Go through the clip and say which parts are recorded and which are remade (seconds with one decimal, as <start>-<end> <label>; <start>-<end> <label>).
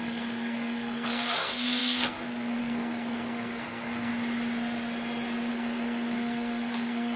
0.0-4.1 remade; 4.1-5.5 recorded; 5.5-7.2 remade